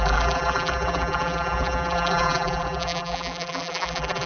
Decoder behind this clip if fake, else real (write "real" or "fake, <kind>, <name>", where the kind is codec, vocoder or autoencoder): fake, vocoder, BigVGAN v2